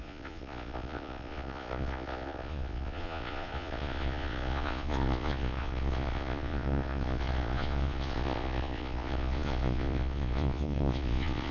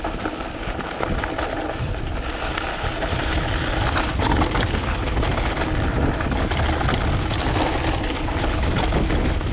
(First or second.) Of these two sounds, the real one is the second